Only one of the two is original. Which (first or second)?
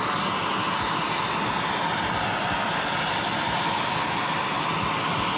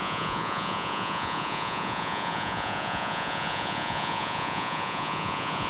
first